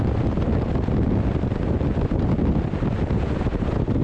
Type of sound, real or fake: real